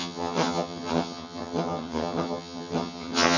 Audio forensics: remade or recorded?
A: remade